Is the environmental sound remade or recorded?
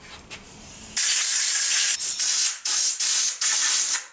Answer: recorded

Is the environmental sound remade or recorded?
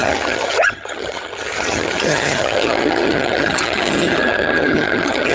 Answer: remade